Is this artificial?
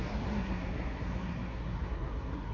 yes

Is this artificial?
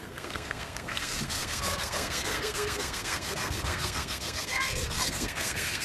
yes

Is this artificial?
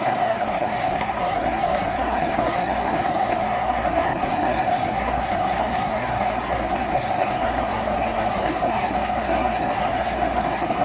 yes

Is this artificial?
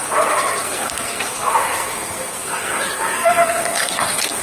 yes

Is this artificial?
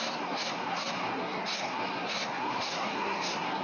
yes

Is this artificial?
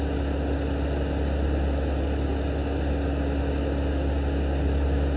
no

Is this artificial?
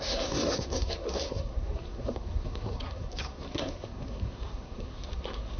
yes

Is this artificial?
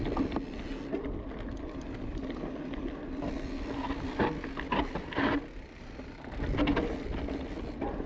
no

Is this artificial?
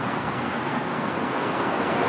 yes